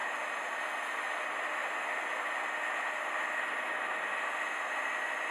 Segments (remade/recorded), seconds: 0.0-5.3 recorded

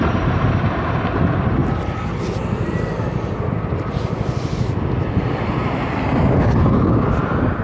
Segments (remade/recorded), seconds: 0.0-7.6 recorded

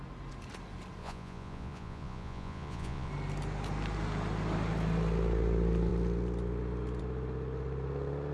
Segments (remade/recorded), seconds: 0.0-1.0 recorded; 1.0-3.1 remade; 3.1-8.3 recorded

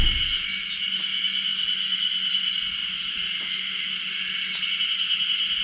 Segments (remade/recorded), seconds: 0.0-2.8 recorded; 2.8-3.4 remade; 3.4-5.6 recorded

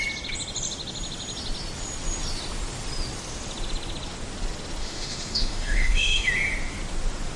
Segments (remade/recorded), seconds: 0.0-4.8 recorded; 4.8-6.3 remade; 6.3-7.4 recorded